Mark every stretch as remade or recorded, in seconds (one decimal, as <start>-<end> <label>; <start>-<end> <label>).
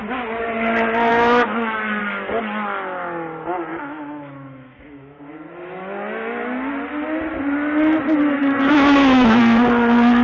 0.0-1.1 recorded; 1.1-2.0 remade; 2.0-3.7 recorded; 3.7-5.2 remade; 5.2-8.4 recorded; 8.4-9.4 remade; 9.4-10.2 recorded